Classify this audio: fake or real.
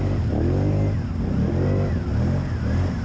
real